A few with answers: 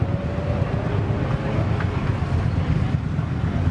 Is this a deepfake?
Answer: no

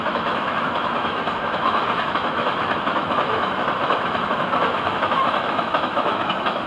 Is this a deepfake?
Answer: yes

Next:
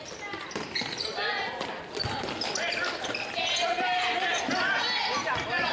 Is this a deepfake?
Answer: no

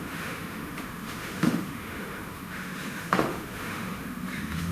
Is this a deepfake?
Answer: yes